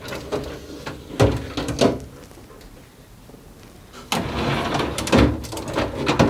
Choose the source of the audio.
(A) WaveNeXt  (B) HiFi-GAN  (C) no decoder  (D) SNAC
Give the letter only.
C